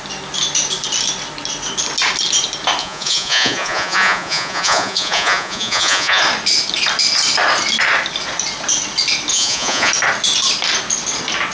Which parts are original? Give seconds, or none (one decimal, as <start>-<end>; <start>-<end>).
0.0-2.8; 6.2-9.3; 9.9-11.5